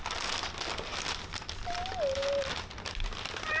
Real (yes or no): yes